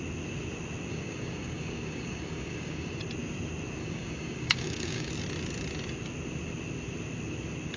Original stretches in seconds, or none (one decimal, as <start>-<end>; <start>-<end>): 0.0-0.9; 3.0-3.8; 5.1-7.8